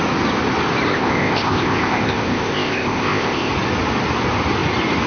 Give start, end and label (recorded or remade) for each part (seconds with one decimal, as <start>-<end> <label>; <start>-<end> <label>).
0.0-0.9 recorded; 0.9-3.5 remade; 3.5-5.1 recorded